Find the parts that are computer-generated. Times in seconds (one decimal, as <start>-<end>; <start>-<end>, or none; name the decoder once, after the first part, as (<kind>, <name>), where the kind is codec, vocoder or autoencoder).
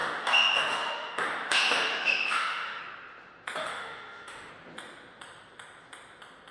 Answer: 0.0-2.8 (autoencoder, DAC-VAE); 3.6-4.5